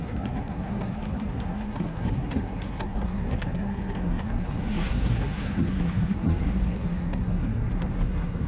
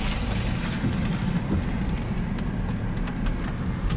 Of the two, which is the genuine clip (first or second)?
second